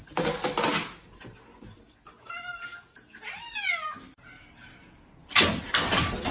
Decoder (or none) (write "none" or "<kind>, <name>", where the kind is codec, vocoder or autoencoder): none